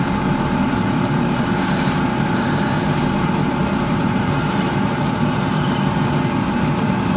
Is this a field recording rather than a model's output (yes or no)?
yes